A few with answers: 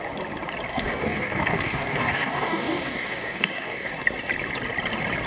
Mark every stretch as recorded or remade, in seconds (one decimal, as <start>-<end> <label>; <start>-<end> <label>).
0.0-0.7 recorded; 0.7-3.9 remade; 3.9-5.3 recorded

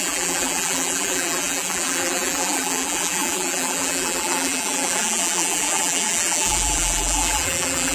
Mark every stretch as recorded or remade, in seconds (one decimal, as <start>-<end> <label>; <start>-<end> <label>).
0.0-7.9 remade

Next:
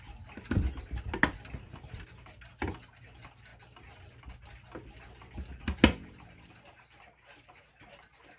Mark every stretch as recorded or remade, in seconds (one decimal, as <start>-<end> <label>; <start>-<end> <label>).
0.0-8.4 recorded

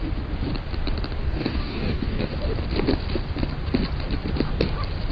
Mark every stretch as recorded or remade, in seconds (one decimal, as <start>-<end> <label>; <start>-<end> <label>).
0.0-1.2 recorded; 1.2-2.3 remade; 2.3-5.1 recorded

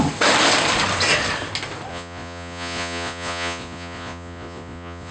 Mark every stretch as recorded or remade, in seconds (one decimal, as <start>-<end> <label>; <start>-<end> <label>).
0.0-1.9 recorded; 1.9-5.1 remade

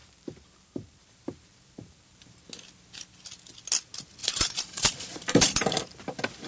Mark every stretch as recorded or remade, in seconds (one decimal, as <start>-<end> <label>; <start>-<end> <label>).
0.0-2.4 remade; 2.4-4.2 recorded; 4.2-5.8 remade; 5.8-6.5 recorded